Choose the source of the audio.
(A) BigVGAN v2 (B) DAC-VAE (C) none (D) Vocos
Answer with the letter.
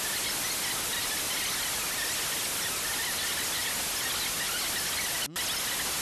C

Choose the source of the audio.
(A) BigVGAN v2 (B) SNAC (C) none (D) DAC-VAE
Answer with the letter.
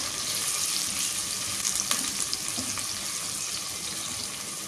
C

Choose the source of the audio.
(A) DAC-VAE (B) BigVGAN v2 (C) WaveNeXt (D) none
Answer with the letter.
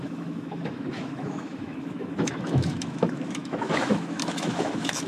A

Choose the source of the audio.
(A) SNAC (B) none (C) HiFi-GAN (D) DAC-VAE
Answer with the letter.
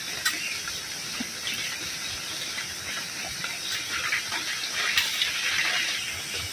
B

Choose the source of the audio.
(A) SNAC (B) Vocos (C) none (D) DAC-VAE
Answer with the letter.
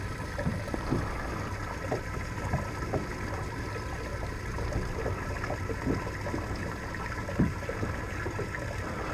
C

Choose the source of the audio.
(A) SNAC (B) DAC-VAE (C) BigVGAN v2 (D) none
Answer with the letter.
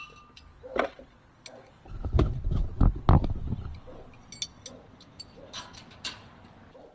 D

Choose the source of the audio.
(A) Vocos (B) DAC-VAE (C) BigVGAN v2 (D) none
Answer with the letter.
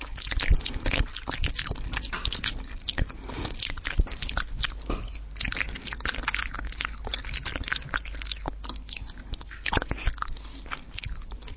D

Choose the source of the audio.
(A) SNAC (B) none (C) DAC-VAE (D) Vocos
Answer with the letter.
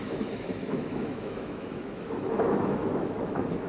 C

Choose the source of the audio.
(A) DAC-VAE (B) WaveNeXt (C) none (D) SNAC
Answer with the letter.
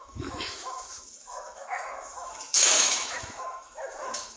A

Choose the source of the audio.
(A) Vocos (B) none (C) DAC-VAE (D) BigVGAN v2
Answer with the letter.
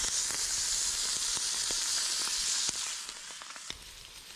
B